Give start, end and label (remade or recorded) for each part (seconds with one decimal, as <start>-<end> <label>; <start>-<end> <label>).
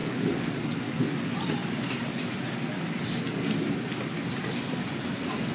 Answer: 0.0-1.1 remade; 1.1-5.5 recorded